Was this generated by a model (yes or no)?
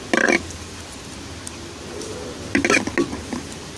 no